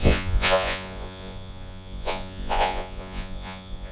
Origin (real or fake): fake